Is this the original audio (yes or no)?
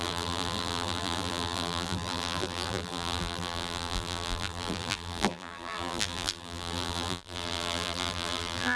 no